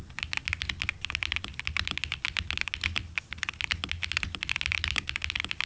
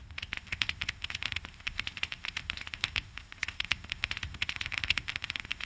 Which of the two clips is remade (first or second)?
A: second